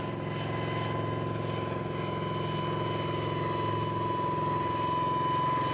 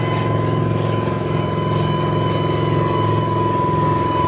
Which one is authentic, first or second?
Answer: first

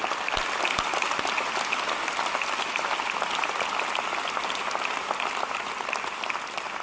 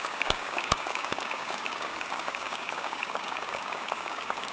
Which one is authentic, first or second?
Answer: first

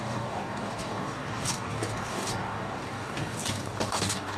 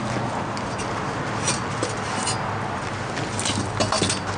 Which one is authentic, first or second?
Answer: second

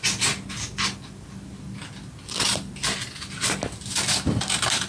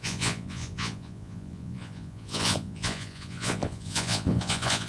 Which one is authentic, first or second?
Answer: first